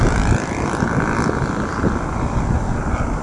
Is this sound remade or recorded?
recorded